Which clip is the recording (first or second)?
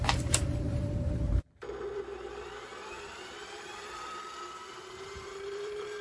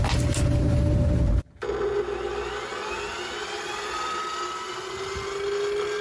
second